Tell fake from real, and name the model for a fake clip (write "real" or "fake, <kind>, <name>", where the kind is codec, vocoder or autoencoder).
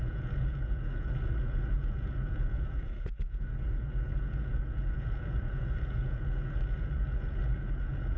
fake, vocoder, Vocos